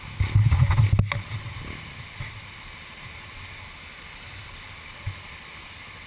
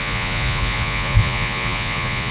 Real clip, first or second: first